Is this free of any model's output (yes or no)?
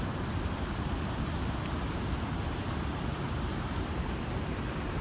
yes